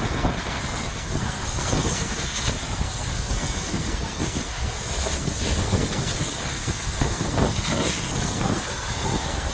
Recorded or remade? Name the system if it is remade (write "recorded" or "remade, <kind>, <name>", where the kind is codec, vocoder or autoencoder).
remade, codec, SNAC